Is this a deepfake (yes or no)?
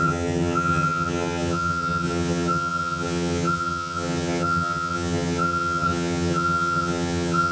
yes